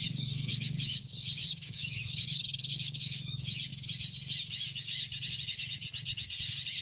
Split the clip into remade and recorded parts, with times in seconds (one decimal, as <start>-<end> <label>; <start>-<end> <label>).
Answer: 0.0-3.7 remade; 3.7-6.8 recorded